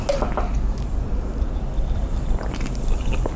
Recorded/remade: recorded